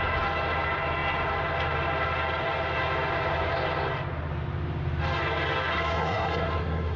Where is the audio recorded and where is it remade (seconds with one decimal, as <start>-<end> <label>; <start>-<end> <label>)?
0.0-5.7 recorded; 5.7-7.0 remade